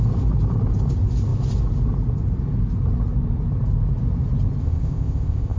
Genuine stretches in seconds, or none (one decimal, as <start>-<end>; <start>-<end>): 0.0-4.6